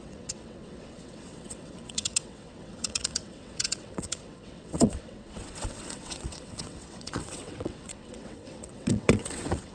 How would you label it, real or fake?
fake